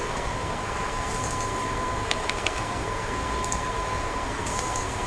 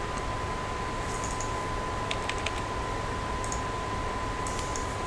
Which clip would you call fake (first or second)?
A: first